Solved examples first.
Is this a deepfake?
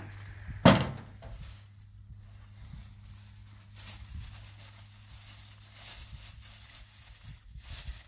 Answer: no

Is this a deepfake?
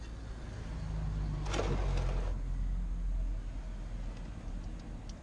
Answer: no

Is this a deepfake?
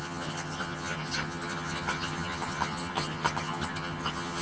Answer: yes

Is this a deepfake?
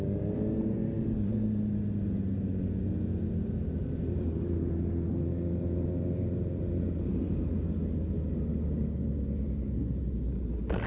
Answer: no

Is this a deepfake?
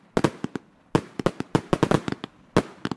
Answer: no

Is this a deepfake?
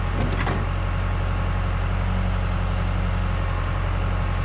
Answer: no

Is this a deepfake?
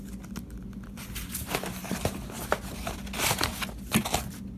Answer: no